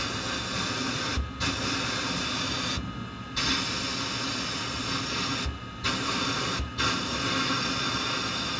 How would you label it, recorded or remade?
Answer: recorded